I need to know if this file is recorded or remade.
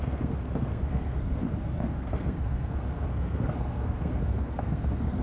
remade